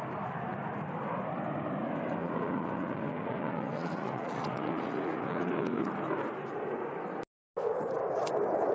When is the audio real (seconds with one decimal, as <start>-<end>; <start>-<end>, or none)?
0.0-2.2; 5.9-8.7